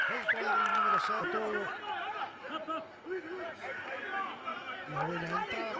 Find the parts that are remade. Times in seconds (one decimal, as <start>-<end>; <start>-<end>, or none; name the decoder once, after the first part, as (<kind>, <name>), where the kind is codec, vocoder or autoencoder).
none